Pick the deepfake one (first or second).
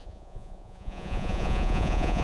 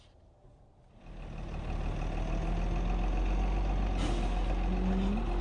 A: first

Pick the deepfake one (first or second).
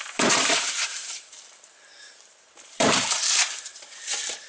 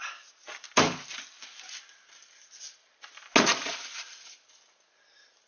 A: first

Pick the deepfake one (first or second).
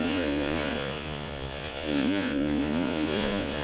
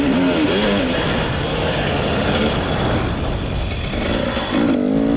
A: first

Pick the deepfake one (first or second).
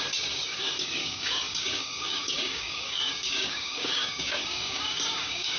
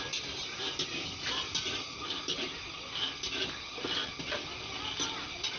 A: first